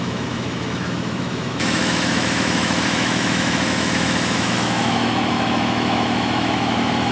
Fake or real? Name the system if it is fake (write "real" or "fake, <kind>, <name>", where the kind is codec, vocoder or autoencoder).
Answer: fake, autoencoder, DAC-VAE